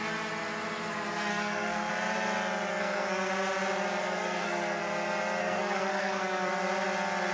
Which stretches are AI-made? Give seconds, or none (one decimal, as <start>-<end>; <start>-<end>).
1.3-1.9; 2.7-3.3; 4.0-4.8; 5.4-6.5